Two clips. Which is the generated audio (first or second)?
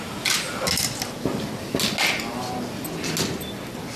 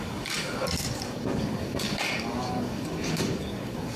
second